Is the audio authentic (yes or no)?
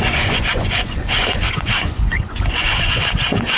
no